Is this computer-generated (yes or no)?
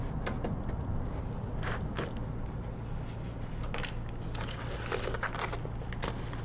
no